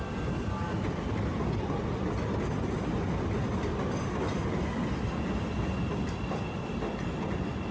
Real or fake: real